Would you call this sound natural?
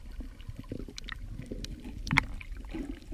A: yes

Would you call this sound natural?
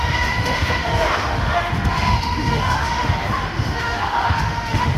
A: no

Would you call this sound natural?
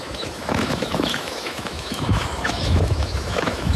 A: no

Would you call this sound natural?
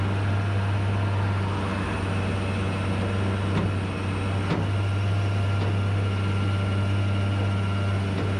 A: yes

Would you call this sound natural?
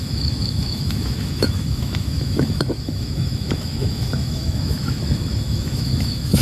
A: no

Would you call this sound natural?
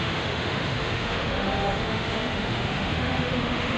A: no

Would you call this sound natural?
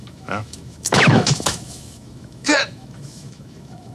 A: no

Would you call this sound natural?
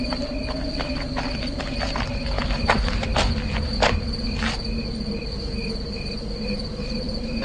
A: yes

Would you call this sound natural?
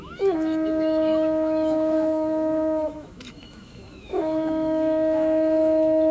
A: no